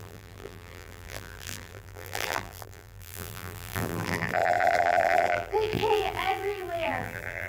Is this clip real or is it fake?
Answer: fake